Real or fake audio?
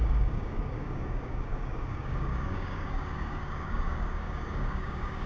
fake